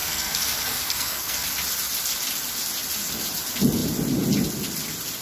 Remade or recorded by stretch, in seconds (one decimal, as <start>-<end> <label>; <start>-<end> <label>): 0.0-1.5 remade; 1.5-5.2 recorded

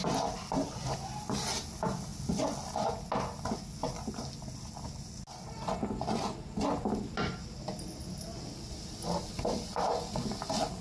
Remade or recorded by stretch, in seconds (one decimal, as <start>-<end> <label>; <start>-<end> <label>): 0.0-10.8 recorded